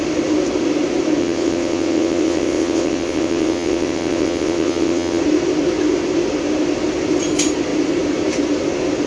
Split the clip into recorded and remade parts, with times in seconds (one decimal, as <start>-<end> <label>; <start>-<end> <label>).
0.0-1.2 recorded; 1.2-5.2 remade; 5.2-9.1 recorded